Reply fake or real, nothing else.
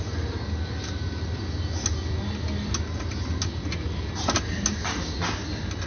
real